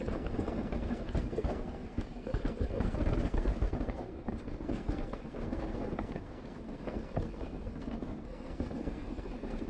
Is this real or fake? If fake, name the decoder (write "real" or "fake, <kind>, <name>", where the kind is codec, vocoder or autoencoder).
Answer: fake, codec, SNAC